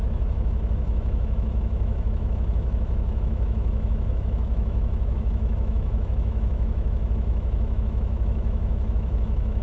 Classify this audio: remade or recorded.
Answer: remade